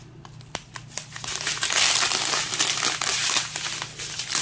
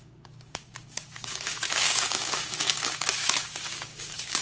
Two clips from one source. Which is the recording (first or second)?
first